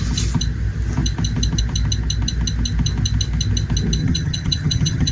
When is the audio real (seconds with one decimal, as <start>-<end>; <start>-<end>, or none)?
0.0-4.0